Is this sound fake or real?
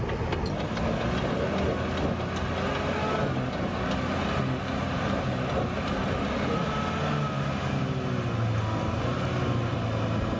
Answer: real